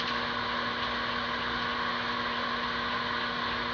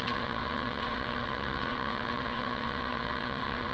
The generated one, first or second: second